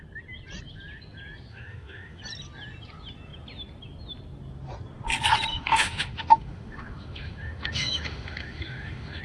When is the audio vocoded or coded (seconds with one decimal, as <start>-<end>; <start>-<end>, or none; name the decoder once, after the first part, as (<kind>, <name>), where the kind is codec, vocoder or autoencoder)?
1.5-2.2 (autoencoder, DAC-VAE); 5.5-9.2